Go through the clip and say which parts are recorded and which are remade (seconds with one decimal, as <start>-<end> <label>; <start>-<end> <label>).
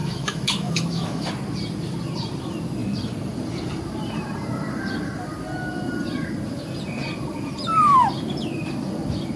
0.0-1.3 remade; 1.3-9.4 recorded